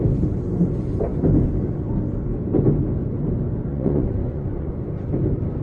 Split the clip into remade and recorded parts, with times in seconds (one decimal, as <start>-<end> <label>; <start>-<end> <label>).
0.0-3.7 recorded; 3.7-4.8 remade; 4.8-5.6 recorded